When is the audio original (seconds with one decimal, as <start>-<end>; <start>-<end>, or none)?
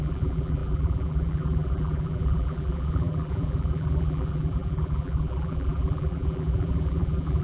none